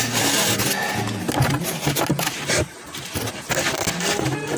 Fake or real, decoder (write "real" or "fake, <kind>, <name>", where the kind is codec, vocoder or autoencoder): real